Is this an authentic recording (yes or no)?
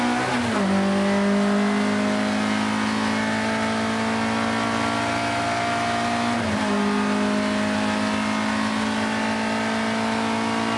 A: yes